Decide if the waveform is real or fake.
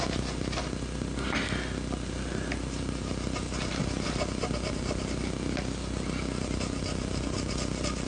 real